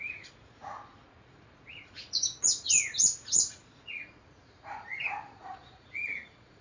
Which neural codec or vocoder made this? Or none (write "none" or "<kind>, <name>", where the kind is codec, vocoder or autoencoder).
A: vocoder, Vocos